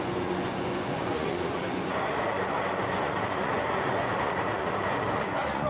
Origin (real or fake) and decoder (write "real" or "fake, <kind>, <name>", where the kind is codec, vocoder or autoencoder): fake, vocoder, Vocos